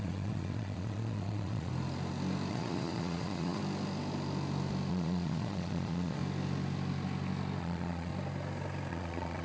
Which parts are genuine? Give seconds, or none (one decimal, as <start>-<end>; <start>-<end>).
1.7-2.5; 3.6-4.9; 6.2-7.6; 8.1-8.9